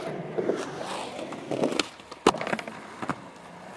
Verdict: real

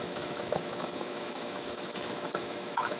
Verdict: fake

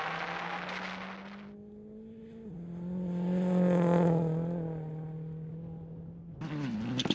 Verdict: real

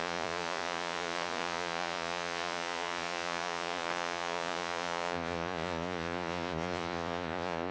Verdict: fake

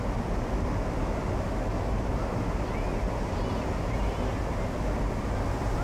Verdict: real